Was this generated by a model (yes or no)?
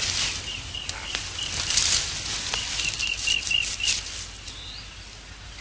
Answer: no